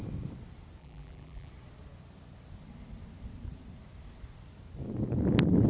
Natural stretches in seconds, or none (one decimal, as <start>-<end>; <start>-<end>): 0.0-0.8; 1.5-5.7